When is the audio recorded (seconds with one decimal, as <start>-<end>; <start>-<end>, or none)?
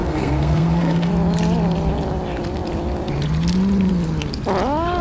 1.1-5.0